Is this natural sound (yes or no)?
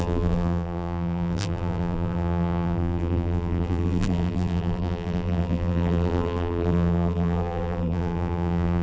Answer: no